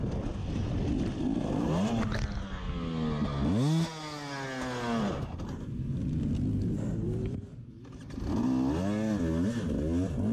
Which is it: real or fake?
real